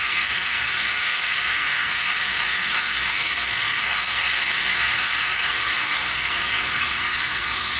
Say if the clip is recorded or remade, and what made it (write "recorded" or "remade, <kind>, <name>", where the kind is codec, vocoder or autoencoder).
remade, codec, SNAC